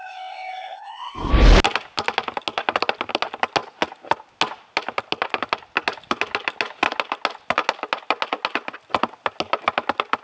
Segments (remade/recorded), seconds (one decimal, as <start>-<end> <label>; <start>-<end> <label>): 0.0-1.3 remade; 1.3-10.2 recorded